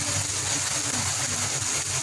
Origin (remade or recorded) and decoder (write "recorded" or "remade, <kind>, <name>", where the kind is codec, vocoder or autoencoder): recorded